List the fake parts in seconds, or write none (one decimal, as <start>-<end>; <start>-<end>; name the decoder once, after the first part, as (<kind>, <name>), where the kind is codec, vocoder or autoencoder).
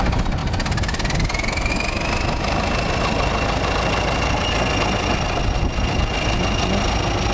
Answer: none